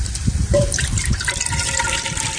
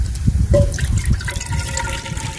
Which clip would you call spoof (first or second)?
first